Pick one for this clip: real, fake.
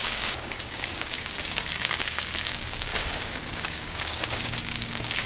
fake